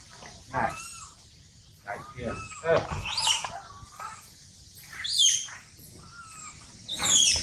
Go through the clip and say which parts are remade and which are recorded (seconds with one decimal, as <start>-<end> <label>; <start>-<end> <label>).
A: 0.0-7.4 recorded

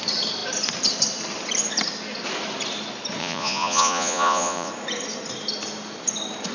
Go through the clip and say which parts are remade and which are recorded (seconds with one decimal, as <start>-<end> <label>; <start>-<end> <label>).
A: 0.0-3.2 recorded; 3.2-4.7 remade; 4.7-6.5 recorded

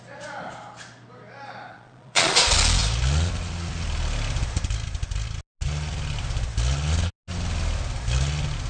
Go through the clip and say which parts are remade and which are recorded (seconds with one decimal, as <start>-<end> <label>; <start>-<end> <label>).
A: 0.0-1.7 recorded; 1.7-2.4 remade; 2.4-8.7 recorded